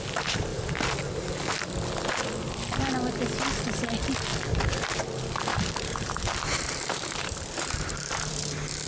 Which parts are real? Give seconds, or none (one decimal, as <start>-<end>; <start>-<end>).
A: 0.0-5.5; 8.4-8.9